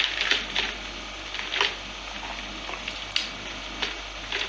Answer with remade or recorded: recorded